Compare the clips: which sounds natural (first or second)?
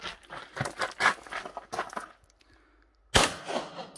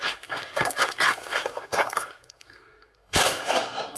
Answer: first